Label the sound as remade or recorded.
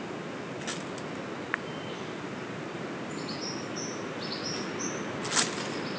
recorded